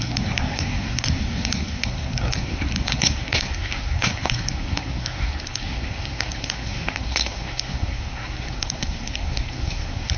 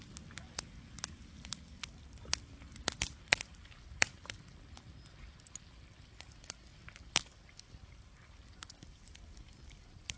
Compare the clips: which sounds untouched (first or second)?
second